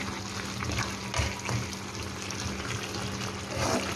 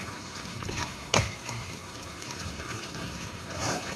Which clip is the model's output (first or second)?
second